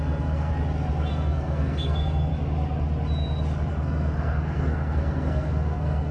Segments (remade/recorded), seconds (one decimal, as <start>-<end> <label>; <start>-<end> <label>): 0.0-0.5 remade; 0.5-1.1 recorded; 1.1-2.3 remade; 2.3-3.7 recorded; 3.7-6.1 remade